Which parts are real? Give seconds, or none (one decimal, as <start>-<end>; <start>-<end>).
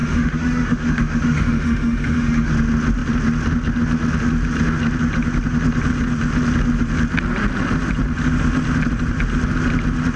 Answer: 2.5-10.2